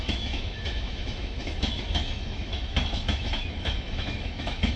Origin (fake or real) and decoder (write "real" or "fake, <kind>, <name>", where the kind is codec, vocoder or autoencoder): fake, autoencoder, DAC-VAE